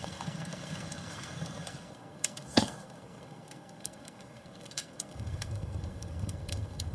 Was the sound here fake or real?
fake